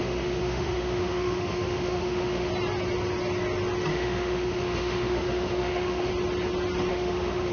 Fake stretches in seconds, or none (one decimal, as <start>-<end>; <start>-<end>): 0.0-2.5; 3.9-6.1; 6.9-7.5